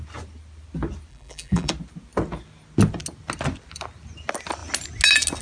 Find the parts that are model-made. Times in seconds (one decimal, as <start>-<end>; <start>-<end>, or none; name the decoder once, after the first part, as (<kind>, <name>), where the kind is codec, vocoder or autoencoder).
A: 1.1-1.7 (vocoder, BigVGAN v2)